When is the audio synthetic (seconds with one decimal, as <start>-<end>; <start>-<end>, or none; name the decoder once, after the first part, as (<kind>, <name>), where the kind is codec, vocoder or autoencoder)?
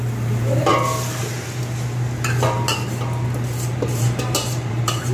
0.0-0.7 (vocoder, BigVGAN v2); 3.8-5.1